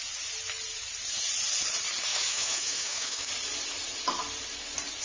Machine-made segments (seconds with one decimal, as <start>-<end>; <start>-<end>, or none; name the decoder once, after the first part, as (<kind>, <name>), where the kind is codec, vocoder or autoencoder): 2.1-3.3 (autoencoder, DAC-VAE)